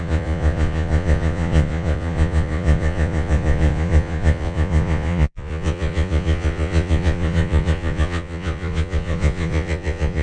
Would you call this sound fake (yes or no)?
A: yes